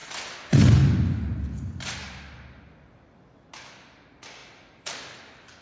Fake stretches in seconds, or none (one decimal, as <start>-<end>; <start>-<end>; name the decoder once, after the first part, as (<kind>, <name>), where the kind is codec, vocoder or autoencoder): none